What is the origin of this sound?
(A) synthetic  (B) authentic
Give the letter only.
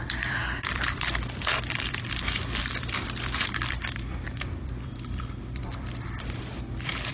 A